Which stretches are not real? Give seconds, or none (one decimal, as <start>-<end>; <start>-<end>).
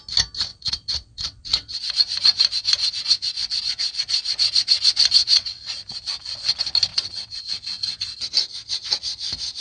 0.5-1.8; 5.2-5.7; 6.9-7.4